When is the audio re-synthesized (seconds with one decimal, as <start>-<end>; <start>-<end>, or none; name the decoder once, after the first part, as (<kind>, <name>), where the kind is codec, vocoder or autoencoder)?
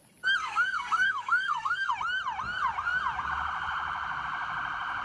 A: 0.4-1.9 (codec, SNAC)